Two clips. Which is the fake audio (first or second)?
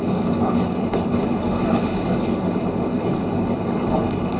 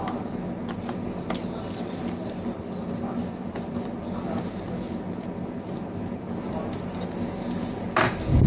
first